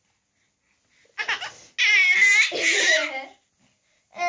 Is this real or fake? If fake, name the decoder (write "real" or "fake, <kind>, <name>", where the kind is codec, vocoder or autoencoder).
real